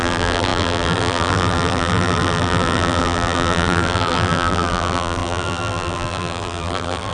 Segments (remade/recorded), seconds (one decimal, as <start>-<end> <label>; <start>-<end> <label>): 0.0-7.1 remade